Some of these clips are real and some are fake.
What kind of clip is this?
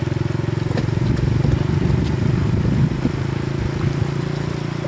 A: real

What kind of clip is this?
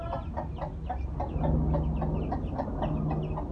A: real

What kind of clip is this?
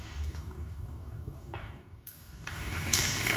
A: fake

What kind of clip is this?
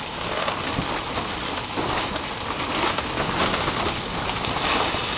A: real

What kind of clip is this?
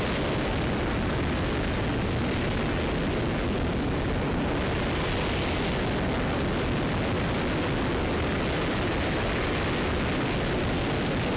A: real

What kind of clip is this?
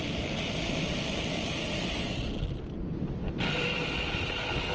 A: real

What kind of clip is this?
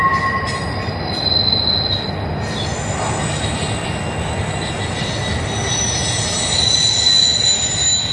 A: real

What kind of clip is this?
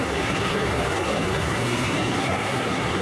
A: fake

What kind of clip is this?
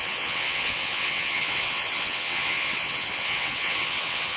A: fake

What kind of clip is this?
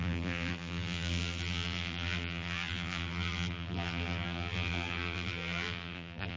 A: fake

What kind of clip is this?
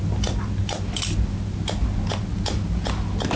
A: real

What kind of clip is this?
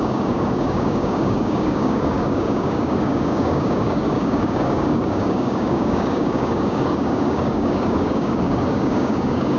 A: fake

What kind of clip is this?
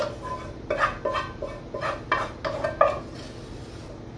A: real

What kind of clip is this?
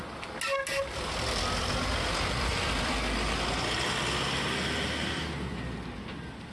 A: real